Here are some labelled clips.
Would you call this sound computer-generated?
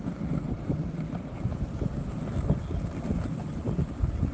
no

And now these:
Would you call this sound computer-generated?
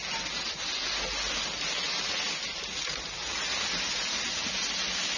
no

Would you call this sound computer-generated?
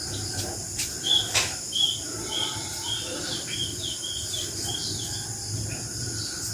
yes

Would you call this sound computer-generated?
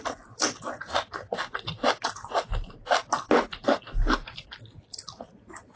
no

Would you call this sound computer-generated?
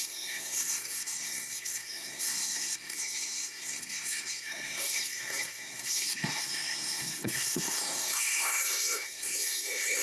yes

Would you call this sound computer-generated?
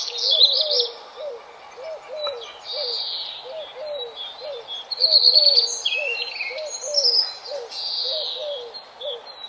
no